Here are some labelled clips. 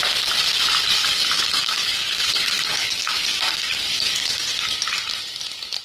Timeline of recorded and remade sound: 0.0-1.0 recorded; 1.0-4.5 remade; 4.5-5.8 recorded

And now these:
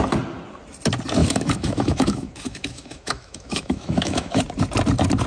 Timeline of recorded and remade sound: 0.0-1.2 recorded; 1.2-4.4 remade; 4.4-5.3 recorded

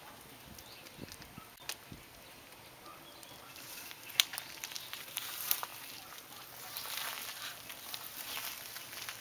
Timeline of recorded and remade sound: 0.0-9.2 recorded

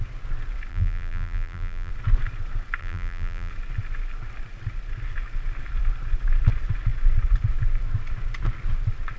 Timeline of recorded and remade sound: 0.0-0.7 recorded; 0.7-1.9 remade; 1.9-2.8 recorded; 2.8-3.5 remade; 3.5-9.2 recorded